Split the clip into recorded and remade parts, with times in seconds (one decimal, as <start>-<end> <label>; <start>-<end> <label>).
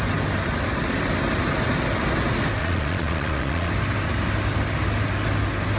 0.0-2.6 recorded; 2.6-3.7 remade; 3.7-5.8 recorded